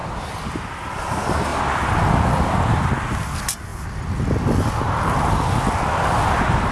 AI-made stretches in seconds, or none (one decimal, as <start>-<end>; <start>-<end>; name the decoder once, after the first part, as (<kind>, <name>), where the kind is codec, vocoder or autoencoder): none